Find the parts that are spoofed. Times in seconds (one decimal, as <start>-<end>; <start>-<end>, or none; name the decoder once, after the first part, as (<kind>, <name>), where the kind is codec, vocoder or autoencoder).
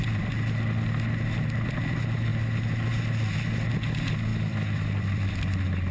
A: 4.3-5.3 (vocoder, BigVGAN v2)